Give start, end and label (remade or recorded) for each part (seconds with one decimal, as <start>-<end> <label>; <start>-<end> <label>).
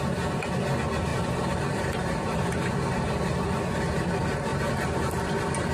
0.0-1.1 recorded; 1.1-3.6 remade; 3.6-4.5 recorded; 4.5-5.7 remade